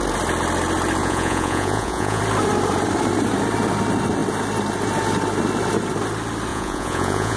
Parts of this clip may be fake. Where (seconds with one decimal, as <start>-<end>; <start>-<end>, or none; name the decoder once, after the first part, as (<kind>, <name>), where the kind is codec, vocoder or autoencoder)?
1.0-2.2 (vocoder, Vocos); 6.5-7.4